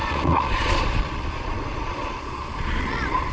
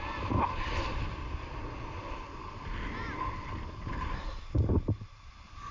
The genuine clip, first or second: second